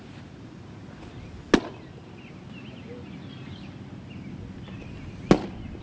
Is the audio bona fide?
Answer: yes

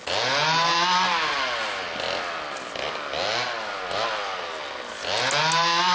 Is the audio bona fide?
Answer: yes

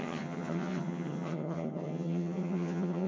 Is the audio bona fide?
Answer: no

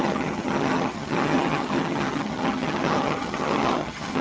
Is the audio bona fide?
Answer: no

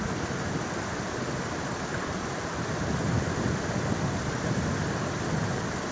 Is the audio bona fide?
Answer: yes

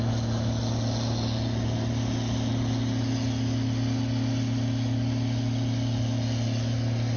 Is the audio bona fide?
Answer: yes